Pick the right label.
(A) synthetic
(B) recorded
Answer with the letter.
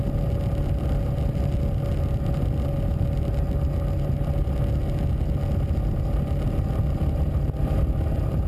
B